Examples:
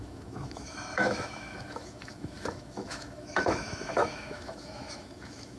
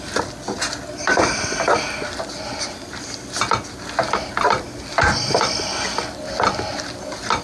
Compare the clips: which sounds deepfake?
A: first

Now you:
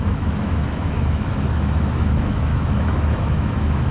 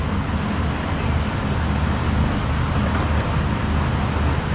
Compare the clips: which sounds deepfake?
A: first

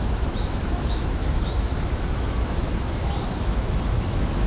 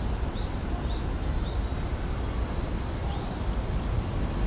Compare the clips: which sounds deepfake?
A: first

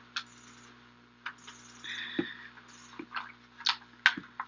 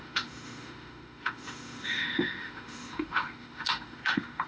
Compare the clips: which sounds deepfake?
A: second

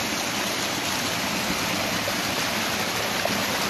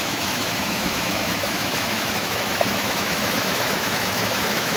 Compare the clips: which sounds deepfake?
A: second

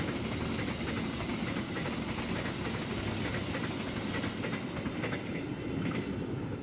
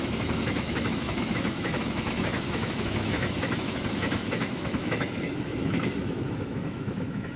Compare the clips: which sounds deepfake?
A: second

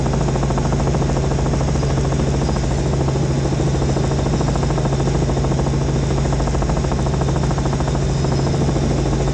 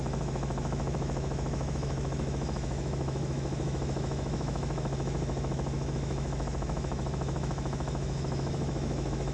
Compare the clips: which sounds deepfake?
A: second